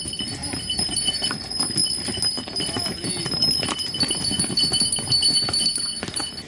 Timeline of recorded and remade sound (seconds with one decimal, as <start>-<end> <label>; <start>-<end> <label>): 0.0-0.4 recorded; 0.4-1.1 remade; 1.1-3.8 recorded; 3.8-6.5 remade